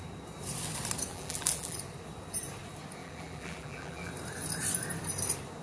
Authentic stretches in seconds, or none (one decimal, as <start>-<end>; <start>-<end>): 0.0-1.1; 1.8-3.0; 4.1-5.6